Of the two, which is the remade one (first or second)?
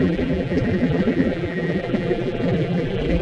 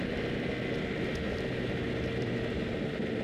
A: first